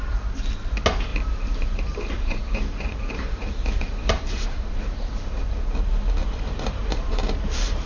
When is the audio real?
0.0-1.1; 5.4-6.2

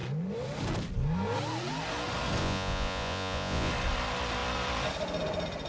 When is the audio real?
0.0-2.4; 3.7-5.7

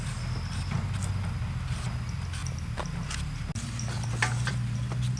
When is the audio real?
0.0-5.2

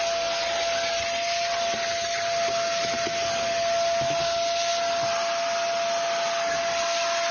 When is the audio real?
0.0-7.3

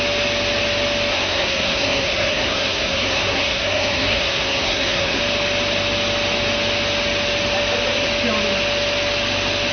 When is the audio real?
0.0-1.1; 5.2-9.7

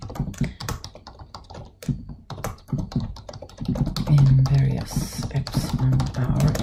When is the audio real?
3.7-5.0